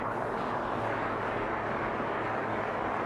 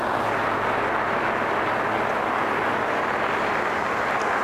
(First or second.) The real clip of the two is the second